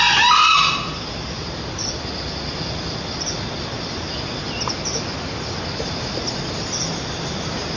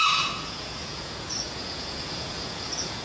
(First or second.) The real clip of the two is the first